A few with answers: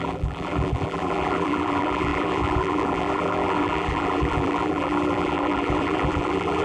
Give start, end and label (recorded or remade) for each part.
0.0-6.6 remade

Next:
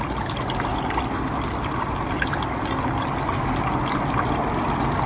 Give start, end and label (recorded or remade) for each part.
0.0-5.1 recorded

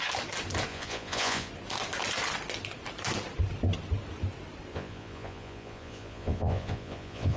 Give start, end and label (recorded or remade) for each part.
0.0-0.7 recorded; 0.7-1.5 remade; 1.5-4.7 recorded; 4.7-7.4 remade

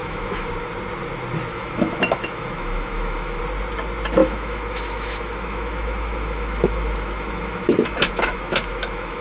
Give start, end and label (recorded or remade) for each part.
0.0-0.5 remade; 0.5-1.5 recorded; 1.5-3.4 remade; 3.4-4.2 recorded; 4.2-9.2 remade

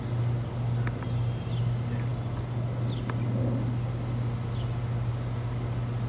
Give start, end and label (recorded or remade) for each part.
0.0-6.1 recorded